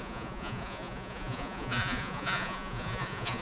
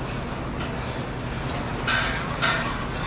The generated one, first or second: first